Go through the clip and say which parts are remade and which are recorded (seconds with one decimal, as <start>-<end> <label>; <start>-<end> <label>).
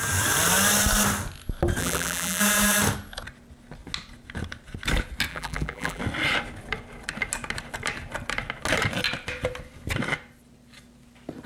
0.0-1.8 recorded; 1.8-2.4 remade; 2.4-5.3 recorded; 5.3-6.0 remade; 6.0-11.5 recorded